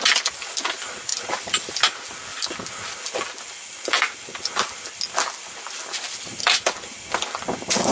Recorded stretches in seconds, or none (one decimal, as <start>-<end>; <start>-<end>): 0.0-7.9